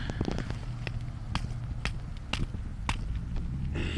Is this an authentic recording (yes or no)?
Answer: yes